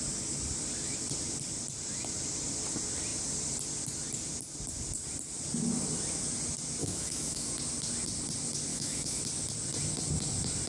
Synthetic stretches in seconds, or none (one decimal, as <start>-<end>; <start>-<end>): 6.8-7.5; 8.7-9.2